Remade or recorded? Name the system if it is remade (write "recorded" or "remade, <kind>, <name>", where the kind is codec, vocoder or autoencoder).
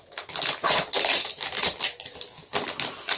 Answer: recorded